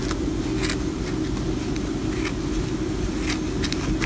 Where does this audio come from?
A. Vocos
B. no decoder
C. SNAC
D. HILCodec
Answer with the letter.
B